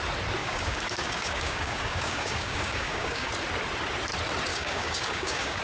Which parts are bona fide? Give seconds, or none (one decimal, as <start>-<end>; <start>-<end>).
0.0-0.4; 3.3-4.5

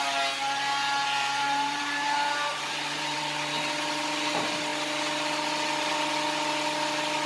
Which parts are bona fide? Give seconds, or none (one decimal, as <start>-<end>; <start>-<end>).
0.0-1.0; 3.2-7.3

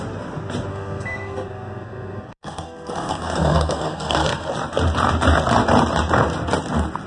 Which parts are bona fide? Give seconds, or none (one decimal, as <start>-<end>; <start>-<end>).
0.0-0.7; 4.5-7.1